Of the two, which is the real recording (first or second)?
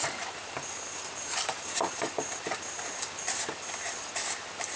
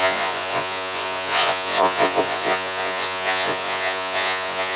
first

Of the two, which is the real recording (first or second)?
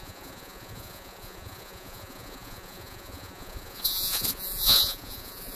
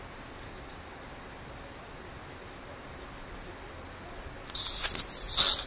second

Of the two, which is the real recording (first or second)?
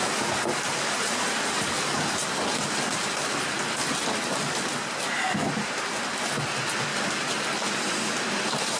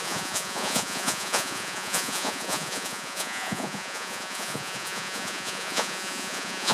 first